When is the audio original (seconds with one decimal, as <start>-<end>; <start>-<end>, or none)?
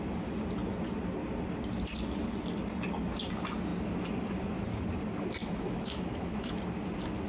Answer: 0.0-5.4; 6.6-7.3